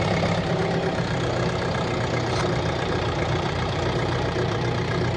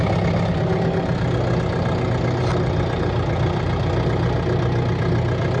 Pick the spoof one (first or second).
first